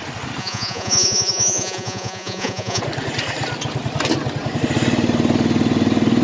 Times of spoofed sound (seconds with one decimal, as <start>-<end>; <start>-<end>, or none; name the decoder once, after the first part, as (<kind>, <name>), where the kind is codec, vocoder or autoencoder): 0.4-2.8 (vocoder, Vocos)